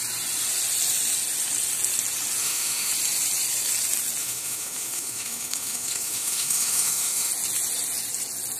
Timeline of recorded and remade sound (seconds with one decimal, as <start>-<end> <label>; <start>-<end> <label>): 0.0-2.4 recorded; 2.4-2.9 remade; 2.9-4.2 recorded; 4.2-7.3 remade; 7.3-8.6 recorded